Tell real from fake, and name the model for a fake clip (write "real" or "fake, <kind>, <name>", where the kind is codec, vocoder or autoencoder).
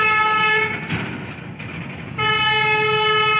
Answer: real